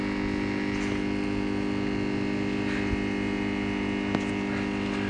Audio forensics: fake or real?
real